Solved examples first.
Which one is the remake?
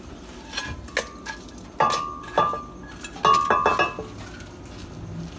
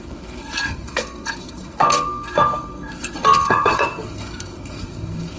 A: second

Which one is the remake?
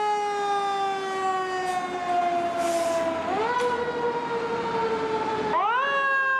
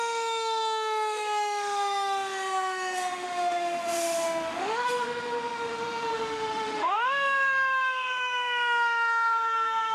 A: second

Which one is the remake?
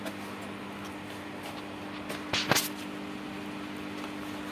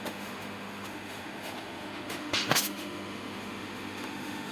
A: second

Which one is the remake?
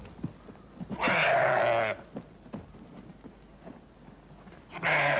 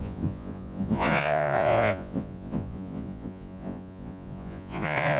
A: second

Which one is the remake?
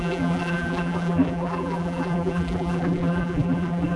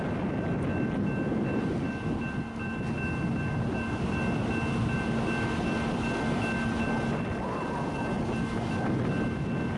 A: first